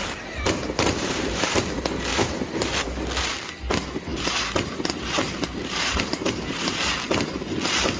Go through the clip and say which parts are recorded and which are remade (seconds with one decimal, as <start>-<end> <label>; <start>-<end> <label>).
0.0-1.7 remade; 1.7-2.1 recorded; 2.1-2.9 remade; 2.9-4.1 recorded; 4.1-6.8 remade; 6.8-8.0 recorded